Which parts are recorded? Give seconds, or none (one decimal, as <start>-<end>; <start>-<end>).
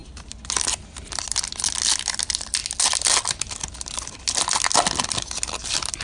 0.0-6.0